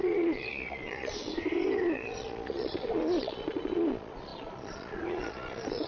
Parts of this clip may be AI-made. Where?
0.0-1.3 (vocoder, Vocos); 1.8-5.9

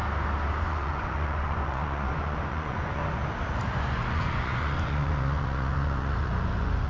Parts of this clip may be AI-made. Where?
0.6-3.0 (vocoder, Vocos); 3.8-6.9

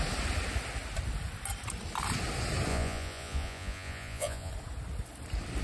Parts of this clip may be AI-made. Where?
2.7-4.5 (vocoder, Vocos)

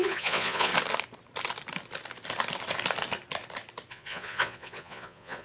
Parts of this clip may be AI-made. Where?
0.0-0.7 (vocoder, Vocos); 3.9-5.4

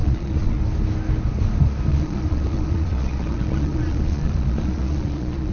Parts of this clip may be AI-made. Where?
0.0-0.6 (vocoder, Vocos); 1.9-5.5

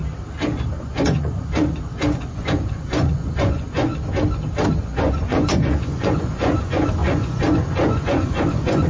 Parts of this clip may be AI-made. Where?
0.7-3.9 (vocoder, Vocos); 4.8-8.9

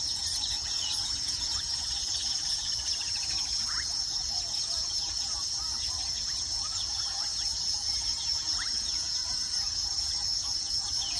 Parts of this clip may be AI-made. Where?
0.0-11.2 (vocoder, Vocos)

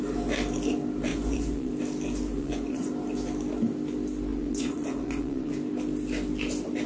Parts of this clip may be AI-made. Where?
1.1-1.7 (vocoder, Vocos); 2.3-2.9; 4.3-5.5